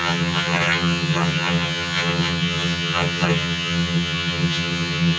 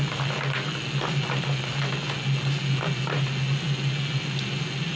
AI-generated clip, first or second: first